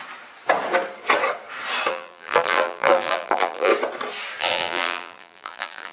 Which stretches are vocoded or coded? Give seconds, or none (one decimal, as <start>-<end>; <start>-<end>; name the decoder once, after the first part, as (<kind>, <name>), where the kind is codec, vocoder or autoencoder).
1.9-3.7 (vocoder, BigVGAN v2); 4.4-5.9